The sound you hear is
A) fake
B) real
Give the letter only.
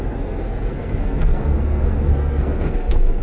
A